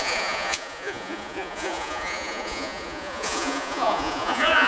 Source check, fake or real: fake